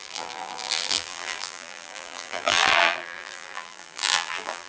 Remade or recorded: remade